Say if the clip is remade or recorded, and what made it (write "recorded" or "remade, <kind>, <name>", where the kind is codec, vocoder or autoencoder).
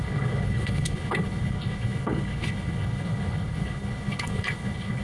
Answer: remade, codec, HILCodec